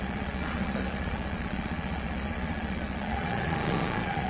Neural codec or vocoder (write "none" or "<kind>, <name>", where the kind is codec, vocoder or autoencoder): vocoder, Vocos